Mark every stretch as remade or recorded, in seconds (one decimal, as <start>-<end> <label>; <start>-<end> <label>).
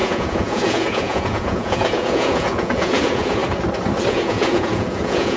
0.0-3.4 remade; 3.4-4.1 recorded; 4.1-5.4 remade